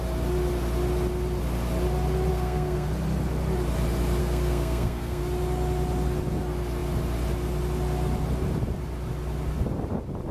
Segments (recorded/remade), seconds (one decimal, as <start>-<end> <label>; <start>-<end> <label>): 0.0-2.3 recorded; 2.3-2.9 remade; 2.9-4.2 recorded; 4.2-5.2 remade; 5.2-10.3 recorded